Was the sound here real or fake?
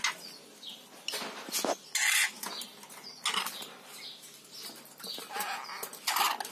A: real